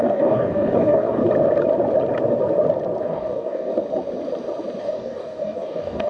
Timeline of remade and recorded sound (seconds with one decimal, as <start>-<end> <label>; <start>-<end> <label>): 0.0-1.2 remade; 1.2-3.0 recorded; 3.0-3.7 remade; 3.7-4.8 recorded; 4.8-6.1 remade